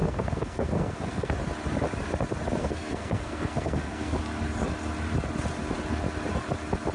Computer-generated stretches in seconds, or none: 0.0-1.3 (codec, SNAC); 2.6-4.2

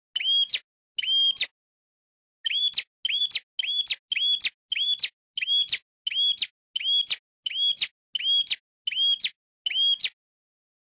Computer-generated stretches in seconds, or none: none

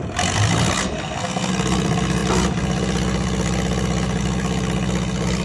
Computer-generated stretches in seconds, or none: 0.8-1.5 (codec, SNAC)

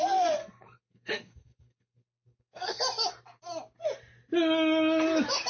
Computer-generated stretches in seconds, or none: 0.4-2.8 (codec, SNAC)

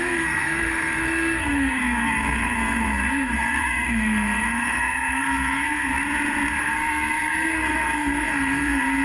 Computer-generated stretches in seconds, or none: 0.0-5.9 (codec, SNAC); 6.6-9.0

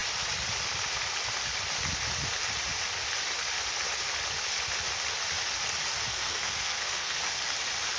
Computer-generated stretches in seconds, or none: 6.1-7.2 (codec, SNAC)

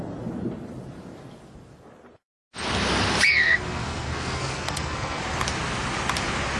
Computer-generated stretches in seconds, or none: 3.3-5.2 (codec, SNAC)